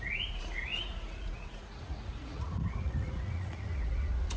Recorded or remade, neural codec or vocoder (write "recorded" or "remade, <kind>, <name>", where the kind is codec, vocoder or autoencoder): remade, vocoder, Vocos